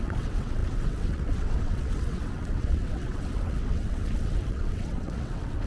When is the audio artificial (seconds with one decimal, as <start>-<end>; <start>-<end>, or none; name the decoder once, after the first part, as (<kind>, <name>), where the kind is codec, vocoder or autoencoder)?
0.0-5.7 (vocoder, WaveNeXt)